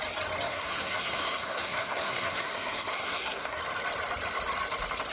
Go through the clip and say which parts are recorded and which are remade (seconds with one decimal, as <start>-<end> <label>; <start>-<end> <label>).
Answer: 0.0-0.5 recorded; 0.5-3.6 remade; 3.6-5.1 recorded